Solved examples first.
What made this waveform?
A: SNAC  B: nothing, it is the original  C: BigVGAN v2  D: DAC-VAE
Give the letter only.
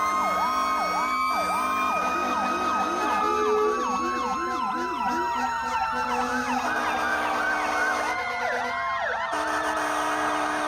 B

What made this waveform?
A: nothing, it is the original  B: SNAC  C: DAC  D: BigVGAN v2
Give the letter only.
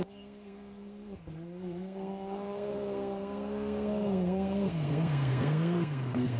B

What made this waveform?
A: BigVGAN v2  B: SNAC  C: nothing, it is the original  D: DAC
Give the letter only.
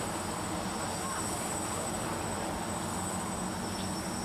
C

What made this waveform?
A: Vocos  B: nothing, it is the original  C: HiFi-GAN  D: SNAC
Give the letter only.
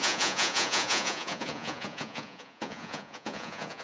A